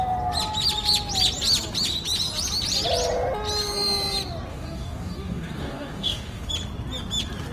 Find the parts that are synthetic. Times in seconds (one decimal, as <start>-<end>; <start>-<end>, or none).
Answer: 4.5-6.5